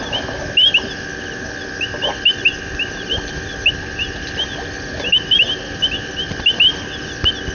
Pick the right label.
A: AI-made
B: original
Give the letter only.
B